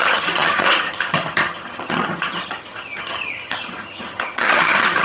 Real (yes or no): no